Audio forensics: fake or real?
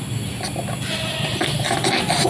real